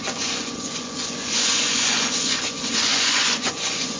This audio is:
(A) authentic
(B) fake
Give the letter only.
B